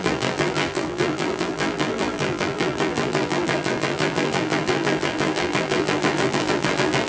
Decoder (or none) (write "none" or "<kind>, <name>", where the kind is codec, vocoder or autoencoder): vocoder, BigVGAN v2